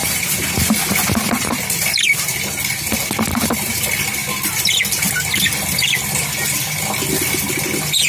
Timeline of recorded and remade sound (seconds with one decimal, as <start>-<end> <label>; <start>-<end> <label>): 0.0-8.1 recorded